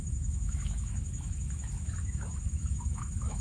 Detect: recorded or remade remade